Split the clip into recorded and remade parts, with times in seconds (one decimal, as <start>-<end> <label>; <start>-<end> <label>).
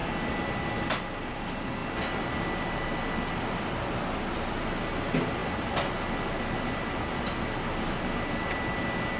0.0-9.2 recorded